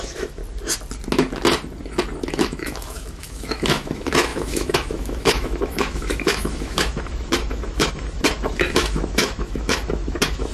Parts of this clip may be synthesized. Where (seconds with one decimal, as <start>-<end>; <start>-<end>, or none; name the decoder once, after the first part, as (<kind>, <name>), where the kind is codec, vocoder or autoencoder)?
0.0-0.4 (autoencoder, DAC-VAE); 2.3-10.5